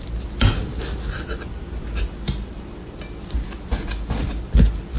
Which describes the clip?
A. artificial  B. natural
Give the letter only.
B